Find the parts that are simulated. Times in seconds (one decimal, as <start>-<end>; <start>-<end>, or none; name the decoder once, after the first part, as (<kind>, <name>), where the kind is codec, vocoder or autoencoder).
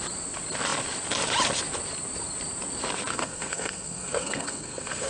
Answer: 3.1-5.1 (codec, SNAC)